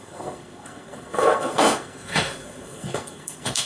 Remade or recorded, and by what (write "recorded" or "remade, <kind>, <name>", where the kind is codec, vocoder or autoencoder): remade, codec, SNAC